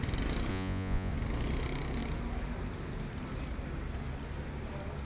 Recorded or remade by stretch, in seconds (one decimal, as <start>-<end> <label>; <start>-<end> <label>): 0.0-0.5 recorded; 0.5-1.1 remade; 1.1-5.0 recorded